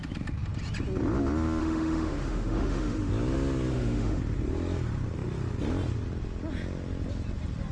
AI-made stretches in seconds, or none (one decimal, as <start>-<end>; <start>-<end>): 1.6-3.1; 3.7-4.2